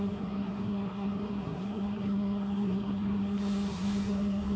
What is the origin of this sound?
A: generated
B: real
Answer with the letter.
A